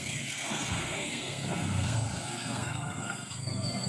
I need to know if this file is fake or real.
fake